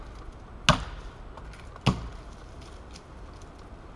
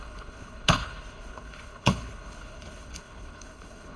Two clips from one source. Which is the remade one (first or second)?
second